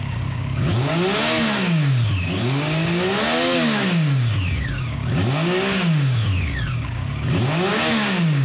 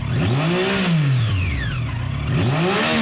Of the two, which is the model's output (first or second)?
first